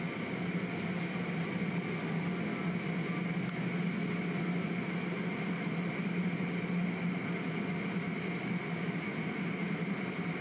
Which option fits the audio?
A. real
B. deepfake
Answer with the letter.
A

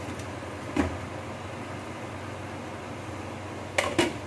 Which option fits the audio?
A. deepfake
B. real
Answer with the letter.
B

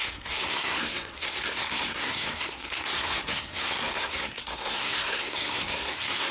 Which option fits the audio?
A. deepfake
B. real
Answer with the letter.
A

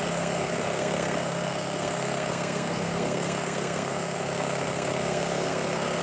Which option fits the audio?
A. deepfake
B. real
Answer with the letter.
A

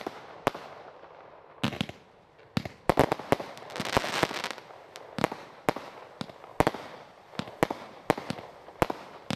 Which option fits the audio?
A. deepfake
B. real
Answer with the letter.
B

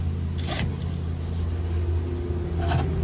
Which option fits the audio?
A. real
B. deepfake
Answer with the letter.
A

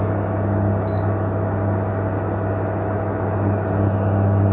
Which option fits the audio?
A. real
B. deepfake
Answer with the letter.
A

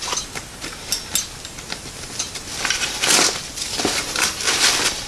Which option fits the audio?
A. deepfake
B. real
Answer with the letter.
B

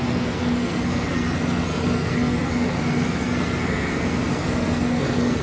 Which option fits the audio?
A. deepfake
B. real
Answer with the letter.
A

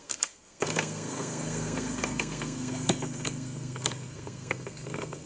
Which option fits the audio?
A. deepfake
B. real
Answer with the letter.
A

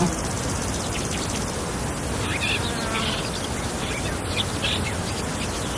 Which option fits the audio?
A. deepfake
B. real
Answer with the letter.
B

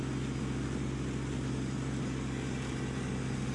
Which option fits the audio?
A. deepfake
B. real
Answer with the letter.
B